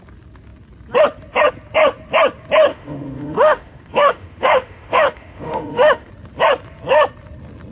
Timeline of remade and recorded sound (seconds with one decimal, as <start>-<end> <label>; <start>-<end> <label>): 0.0-2.7 recorded; 2.7-6.1 remade; 6.1-7.7 recorded